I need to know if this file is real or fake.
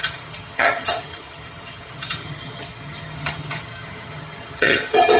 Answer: fake